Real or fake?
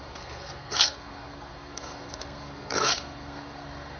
fake